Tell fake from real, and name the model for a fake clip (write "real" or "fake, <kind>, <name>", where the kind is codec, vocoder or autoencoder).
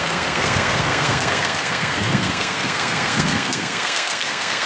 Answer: fake, codec, SNAC